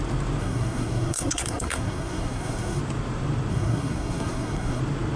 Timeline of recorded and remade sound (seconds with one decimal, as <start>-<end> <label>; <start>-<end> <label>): 0.0-0.4 recorded; 0.4-2.8 remade; 2.8-3.5 recorded; 3.5-4.8 remade; 4.8-5.2 recorded